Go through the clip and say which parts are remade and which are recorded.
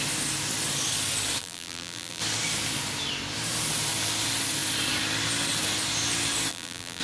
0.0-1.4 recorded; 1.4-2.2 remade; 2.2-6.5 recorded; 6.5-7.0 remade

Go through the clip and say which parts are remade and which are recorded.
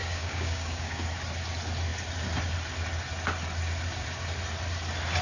0.0-1.0 remade; 1.0-5.2 recorded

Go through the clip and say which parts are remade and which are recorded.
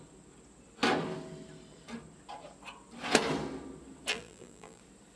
0.0-4.1 recorded; 4.1-4.8 remade; 4.8-5.2 recorded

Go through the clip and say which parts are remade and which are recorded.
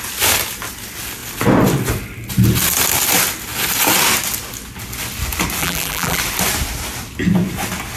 0.0-5.6 recorded; 5.6-6.2 remade; 6.2-8.0 recorded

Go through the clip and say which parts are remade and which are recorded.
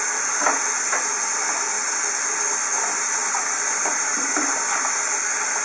0.0-1.8 recorded; 1.8-2.8 remade; 2.8-3.2 recorded; 3.2-4.0 remade; 4.0-5.6 recorded